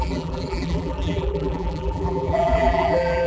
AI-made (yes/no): yes